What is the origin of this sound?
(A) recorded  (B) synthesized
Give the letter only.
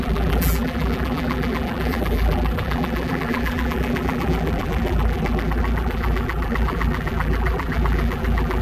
B